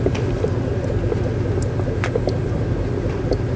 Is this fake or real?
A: real